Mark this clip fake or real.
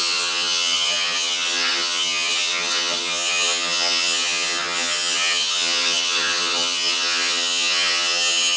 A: fake